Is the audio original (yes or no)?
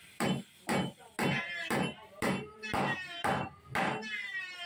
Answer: yes